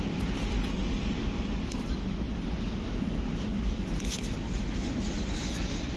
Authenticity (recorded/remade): recorded